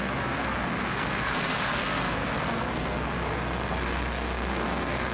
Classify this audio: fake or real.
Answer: fake